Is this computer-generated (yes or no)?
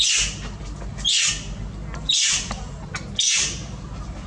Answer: no